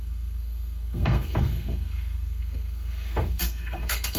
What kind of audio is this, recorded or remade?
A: remade